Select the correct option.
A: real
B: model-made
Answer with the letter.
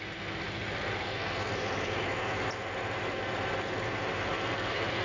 A